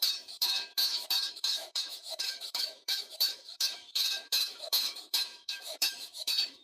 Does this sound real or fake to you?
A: fake